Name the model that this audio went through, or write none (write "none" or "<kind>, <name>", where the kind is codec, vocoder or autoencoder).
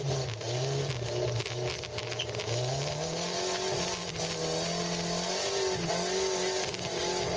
none